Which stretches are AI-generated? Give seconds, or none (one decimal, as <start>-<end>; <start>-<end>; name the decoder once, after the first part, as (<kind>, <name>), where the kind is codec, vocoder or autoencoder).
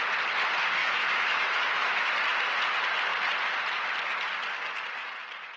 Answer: 0.8-2.1 (autoencoder, DAC-VAE)